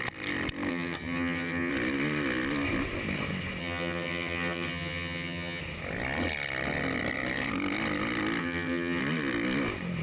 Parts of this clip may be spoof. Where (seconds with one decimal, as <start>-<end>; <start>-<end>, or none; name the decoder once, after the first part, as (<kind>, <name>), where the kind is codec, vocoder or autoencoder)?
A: 0.7-1.7 (vocoder, HiFi-GAN); 3.6-5.6; 8.4-9.0